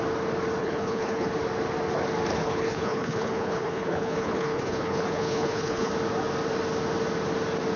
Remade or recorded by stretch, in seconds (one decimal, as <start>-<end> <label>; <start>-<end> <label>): 0.0-0.6 recorded; 0.6-1.3 remade; 1.3-2.3 recorded; 2.3-5.9 remade; 5.9-7.8 recorded